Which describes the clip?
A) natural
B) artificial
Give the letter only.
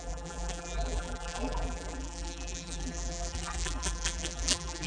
B